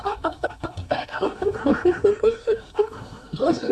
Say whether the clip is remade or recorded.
remade